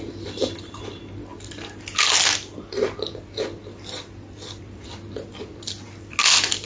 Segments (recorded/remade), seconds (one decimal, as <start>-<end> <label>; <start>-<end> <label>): 0.0-6.7 recorded